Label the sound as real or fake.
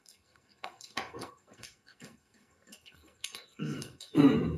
fake